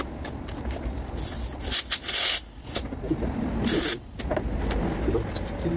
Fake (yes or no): no